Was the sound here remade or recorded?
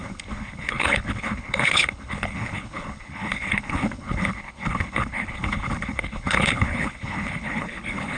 remade